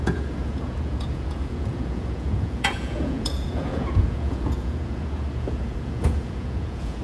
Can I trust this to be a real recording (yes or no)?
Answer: no